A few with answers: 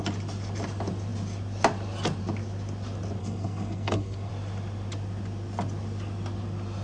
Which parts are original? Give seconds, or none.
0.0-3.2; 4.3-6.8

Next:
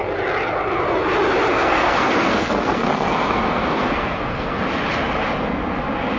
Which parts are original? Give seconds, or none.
0.0-1.5; 4.6-6.2

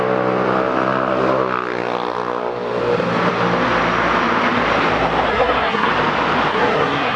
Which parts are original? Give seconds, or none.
0.0-5.3; 5.9-6.5

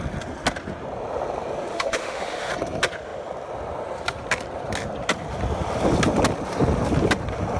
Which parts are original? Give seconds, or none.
0.0-1.7; 2.5-7.6

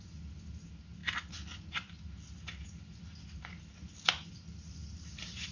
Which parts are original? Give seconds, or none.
0.0-5.5

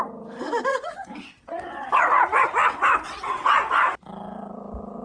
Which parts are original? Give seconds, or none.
0.0-0.7; 1.9-2.6; 3.5-5.0

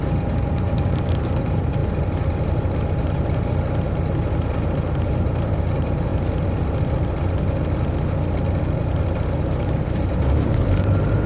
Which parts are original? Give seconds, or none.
1.8-2.5; 6.1-8.8